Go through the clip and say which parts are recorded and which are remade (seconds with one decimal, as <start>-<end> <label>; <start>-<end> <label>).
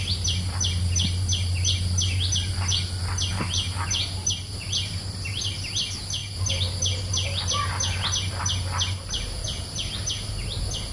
0.0-10.9 recorded